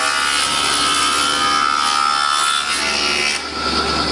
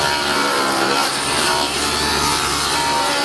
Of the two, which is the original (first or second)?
first